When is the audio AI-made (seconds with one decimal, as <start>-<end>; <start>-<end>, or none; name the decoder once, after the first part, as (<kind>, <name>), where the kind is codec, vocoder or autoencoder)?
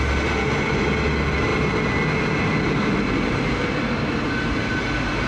none